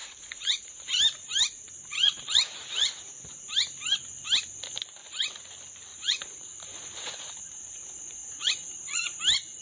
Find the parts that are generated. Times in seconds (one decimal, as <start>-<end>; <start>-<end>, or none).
0.0-0.9; 1.9-3.4; 5.0-5.5; 5.9-9.2